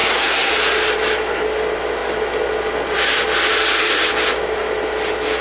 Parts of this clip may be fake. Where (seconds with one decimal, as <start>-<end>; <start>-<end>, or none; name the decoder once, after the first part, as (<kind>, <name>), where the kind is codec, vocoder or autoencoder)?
0.0-0.5 (codec, SNAC)